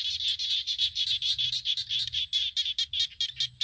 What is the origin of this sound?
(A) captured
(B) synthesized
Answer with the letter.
B